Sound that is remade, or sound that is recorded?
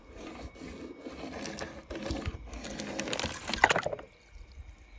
recorded